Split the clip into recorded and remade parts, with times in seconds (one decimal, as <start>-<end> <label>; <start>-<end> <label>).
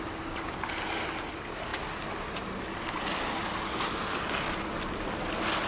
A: 0.0-5.7 recorded